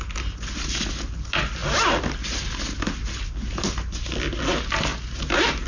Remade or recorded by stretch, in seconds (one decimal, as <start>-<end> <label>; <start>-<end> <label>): 0.0-5.7 recorded